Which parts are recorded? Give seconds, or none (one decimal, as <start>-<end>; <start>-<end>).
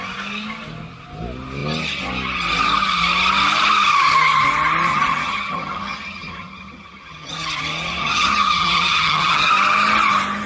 0.0-4.9; 7.3-8.0; 9.5-10.5